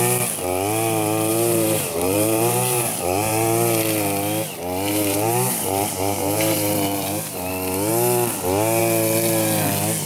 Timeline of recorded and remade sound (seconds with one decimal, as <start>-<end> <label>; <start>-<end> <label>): 0.0-1.3 recorded; 1.3-3.3 remade; 3.3-4.9 recorded; 4.9-7.5 remade; 7.5-10.1 recorded